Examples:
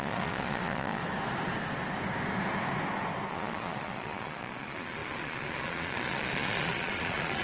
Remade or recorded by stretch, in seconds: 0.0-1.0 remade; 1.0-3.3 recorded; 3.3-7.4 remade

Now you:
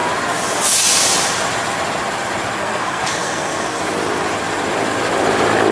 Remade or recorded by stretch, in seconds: 0.0-2.6 recorded; 2.6-3.8 remade; 3.8-5.7 recorded

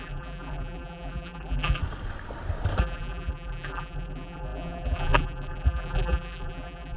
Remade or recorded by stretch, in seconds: 0.0-1.8 remade; 1.8-2.8 recorded; 2.8-7.0 remade

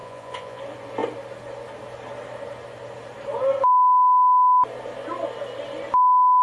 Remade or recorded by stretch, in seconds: 0.0-0.6 remade; 0.6-6.4 recorded